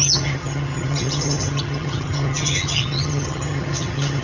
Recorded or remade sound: remade